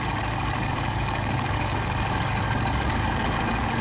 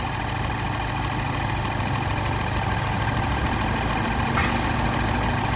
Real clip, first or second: second